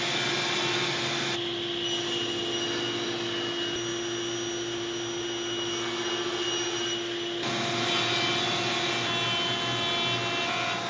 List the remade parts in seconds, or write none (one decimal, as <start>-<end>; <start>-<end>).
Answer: none